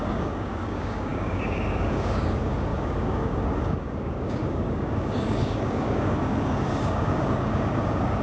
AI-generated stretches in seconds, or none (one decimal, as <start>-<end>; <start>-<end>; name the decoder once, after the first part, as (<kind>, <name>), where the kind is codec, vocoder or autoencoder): 0.0-8.2 (codec, DAC)